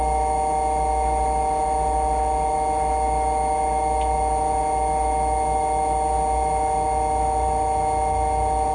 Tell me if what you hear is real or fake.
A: real